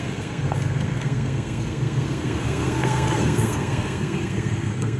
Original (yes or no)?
no